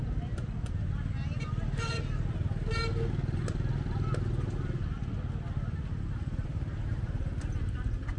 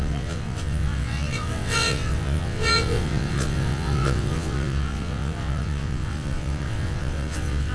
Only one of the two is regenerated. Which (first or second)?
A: second